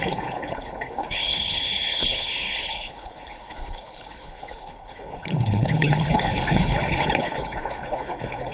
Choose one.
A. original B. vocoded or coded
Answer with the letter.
B